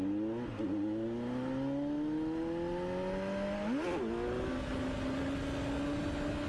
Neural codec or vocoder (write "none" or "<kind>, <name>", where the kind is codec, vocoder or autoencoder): none